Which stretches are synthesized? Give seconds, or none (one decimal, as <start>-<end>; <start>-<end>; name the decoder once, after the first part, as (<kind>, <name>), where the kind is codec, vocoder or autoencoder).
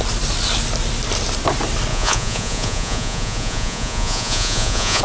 1.9-5.0 (vocoder, Vocos)